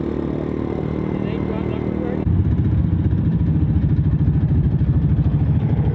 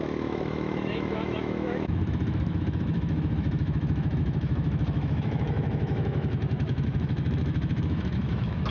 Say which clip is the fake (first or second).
second